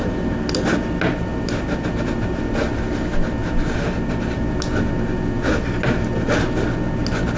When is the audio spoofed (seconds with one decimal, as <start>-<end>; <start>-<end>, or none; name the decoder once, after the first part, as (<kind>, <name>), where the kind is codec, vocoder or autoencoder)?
none